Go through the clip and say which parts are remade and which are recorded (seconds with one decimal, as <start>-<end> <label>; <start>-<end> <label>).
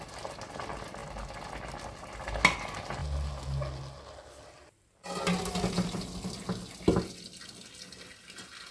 0.0-8.7 recorded